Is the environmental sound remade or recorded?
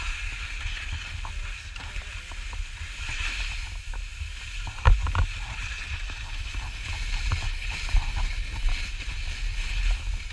recorded